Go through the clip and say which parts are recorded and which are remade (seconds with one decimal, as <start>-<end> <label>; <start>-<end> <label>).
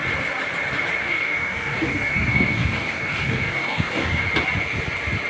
0.0-1.0 recorded; 1.0-4.2 remade; 4.2-5.3 recorded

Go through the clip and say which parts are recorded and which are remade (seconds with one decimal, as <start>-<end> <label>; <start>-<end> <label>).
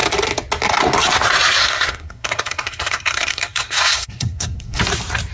0.0-1.6 recorded; 1.6-4.8 remade; 4.8-5.3 recorded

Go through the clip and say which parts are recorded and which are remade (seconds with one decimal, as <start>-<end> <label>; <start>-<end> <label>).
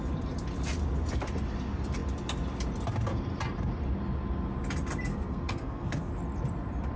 0.0-5.1 recorded; 5.1-6.1 remade; 6.1-7.0 recorded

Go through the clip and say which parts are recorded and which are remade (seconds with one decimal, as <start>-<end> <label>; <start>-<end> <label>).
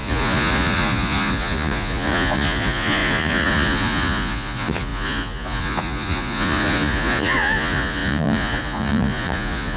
0.0-9.8 remade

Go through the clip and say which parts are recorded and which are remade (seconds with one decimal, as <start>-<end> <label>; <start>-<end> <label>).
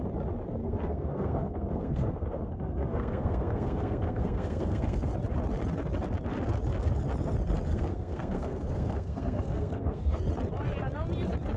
0.0-0.6 recorded; 0.6-5.1 remade; 5.1-7.7 recorded; 7.7-10.2 remade; 10.2-11.6 recorded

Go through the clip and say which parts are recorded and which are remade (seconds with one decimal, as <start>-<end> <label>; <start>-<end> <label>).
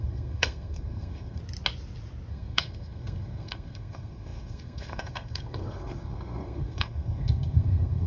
0.0-1.4 remade; 1.4-2.3 recorded; 2.3-8.1 remade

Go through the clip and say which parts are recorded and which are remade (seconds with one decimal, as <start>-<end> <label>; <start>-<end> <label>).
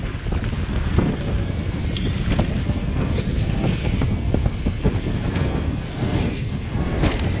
0.0-0.7 recorded; 0.7-1.8 remade; 1.8-2.6 recorded; 2.6-7.0 remade; 7.0-7.4 recorded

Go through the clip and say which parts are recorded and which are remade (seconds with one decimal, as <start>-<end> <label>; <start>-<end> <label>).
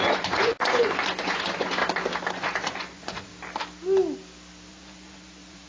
0.0-1.8 remade; 1.8-2.3 recorded; 2.3-3.3 remade; 3.3-4.7 recorded; 4.7-5.7 remade